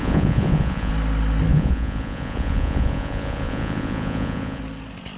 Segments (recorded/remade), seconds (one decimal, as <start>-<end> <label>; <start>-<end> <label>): 0.0-0.9 remade; 0.9-1.5 recorded; 1.5-4.6 remade; 4.6-5.2 recorded